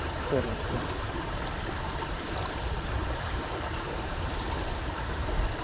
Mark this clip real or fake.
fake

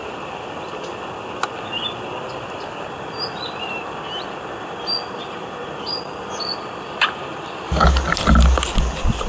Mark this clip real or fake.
real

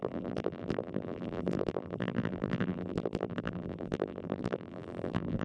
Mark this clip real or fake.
fake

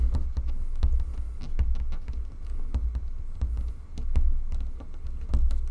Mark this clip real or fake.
real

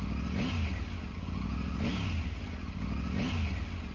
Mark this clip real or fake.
real